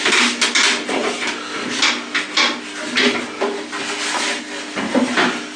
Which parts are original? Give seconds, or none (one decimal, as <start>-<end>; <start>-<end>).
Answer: 0.0-5.6